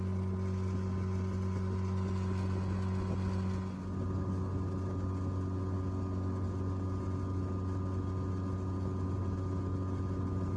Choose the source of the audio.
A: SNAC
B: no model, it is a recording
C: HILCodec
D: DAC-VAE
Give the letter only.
B